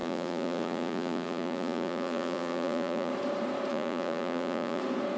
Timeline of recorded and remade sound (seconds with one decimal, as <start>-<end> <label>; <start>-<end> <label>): 0.0-3.1 remade; 3.1-3.7 recorded; 3.7-4.8 remade; 4.8-5.2 recorded